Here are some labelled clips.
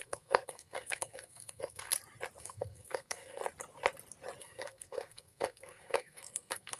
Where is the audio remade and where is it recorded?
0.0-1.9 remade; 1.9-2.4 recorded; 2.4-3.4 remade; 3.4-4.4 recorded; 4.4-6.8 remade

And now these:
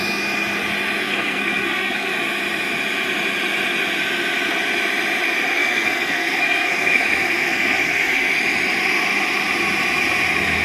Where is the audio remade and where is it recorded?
0.0-1.0 recorded; 1.0-2.1 remade; 2.1-5.6 recorded; 5.6-8.4 remade; 8.4-10.6 recorded

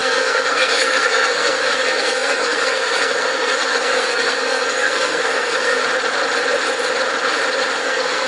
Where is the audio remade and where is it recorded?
0.0-5.8 remade; 5.8-7.8 recorded; 7.8-8.3 remade

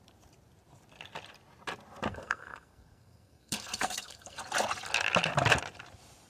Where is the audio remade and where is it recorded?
0.0-2.1 recorded; 2.1-4.4 remade; 4.4-6.3 recorded

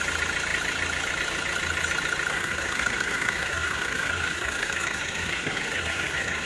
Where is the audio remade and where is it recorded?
0.0-2.3 recorded; 2.3-6.5 remade

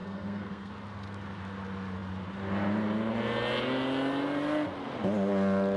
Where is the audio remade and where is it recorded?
0.0-0.7 remade; 0.7-5.8 recorded

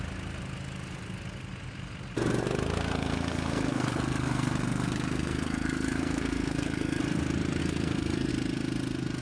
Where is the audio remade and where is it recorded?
0.0-2.9 recorded; 2.9-7.0 remade; 7.0-7.6 recorded; 7.6-8.3 remade; 8.3-9.2 recorded